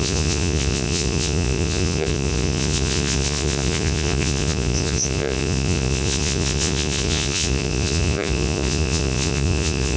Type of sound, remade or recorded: remade